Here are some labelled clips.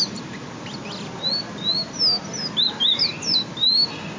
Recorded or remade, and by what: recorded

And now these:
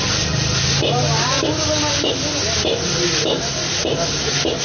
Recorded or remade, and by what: recorded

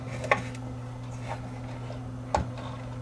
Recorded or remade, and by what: recorded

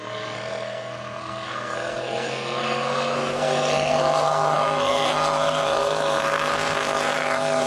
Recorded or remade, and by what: remade, codec, SNAC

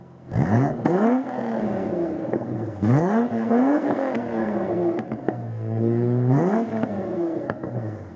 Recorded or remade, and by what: remade, codec, SNAC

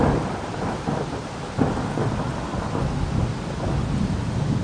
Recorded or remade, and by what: recorded